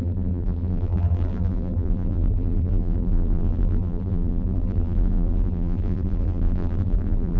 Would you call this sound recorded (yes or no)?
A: no